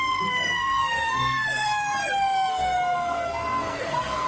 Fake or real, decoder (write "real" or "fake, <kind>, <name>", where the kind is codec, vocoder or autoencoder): fake, codec, SNAC